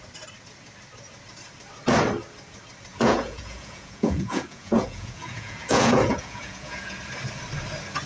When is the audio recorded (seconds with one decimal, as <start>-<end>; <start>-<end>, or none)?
0.0-2.9; 7.0-8.1